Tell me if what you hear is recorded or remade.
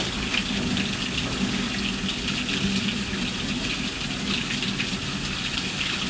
recorded